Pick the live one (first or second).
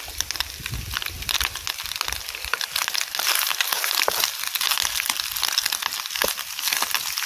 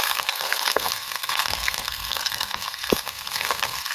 first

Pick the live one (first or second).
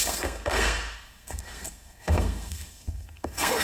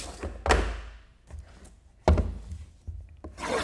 second